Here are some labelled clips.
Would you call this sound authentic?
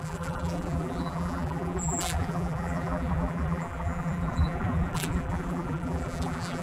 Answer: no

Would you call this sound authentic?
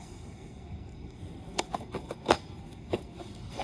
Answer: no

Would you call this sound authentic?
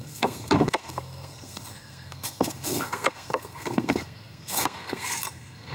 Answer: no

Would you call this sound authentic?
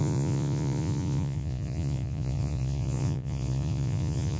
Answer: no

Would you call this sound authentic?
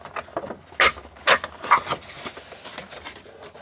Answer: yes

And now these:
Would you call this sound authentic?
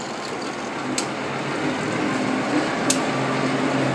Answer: yes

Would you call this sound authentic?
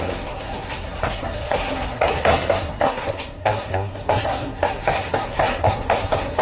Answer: no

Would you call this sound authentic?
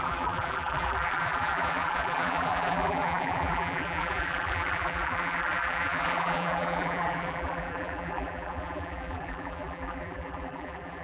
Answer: no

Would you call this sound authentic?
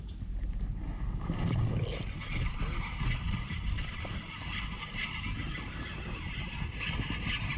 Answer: yes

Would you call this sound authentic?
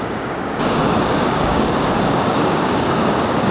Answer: no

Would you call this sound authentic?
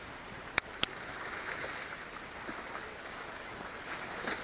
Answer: yes